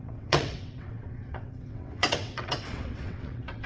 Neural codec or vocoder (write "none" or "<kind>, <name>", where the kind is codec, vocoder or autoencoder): vocoder, WaveNeXt